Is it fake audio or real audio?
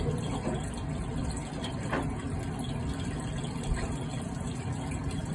real